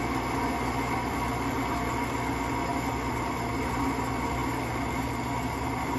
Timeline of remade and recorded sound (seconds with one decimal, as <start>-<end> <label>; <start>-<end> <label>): 0.0-6.0 recorded